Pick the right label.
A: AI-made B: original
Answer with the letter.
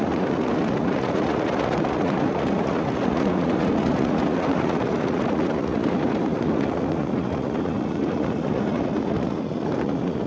A